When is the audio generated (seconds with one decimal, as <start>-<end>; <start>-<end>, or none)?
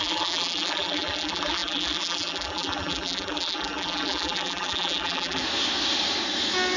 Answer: 0.0-5.4